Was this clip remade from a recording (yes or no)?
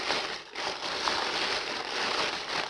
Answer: no